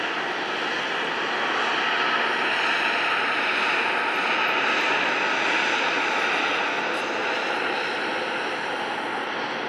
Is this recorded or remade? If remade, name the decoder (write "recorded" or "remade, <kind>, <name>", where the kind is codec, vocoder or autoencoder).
recorded